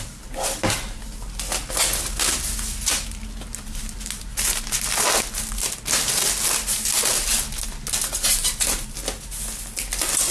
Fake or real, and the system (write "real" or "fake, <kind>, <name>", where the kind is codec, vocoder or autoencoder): real